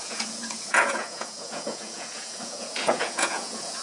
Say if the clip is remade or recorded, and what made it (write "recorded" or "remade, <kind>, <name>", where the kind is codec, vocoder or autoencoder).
remade, vocoder, Vocos